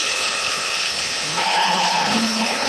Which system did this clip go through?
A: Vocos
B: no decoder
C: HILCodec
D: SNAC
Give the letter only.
C